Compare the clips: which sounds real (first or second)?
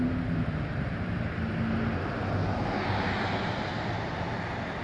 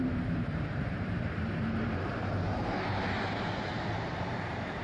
first